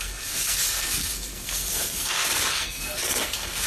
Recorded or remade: remade